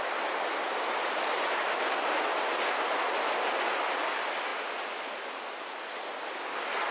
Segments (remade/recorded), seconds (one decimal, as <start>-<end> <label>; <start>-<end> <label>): 0.0-6.9 recorded